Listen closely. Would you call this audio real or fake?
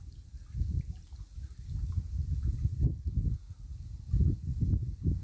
real